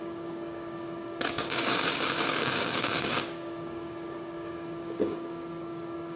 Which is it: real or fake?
fake